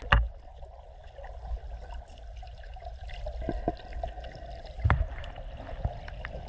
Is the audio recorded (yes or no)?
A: yes